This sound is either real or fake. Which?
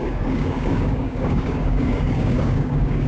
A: fake